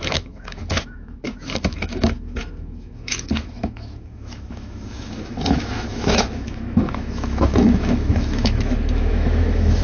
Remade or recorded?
remade